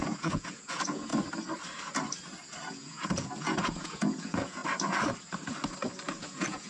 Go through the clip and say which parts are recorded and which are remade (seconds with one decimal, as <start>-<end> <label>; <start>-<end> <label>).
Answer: 0.0-1.1 remade; 1.1-2.7 recorded; 2.7-4.6 remade; 4.6-6.2 recorded; 6.2-6.7 remade